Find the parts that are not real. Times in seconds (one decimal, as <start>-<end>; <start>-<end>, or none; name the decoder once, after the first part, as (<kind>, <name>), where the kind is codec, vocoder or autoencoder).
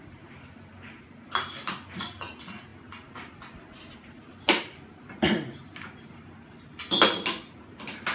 none